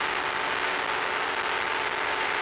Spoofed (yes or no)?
no